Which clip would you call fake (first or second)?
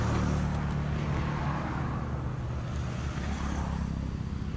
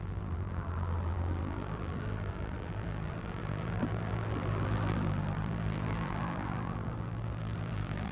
second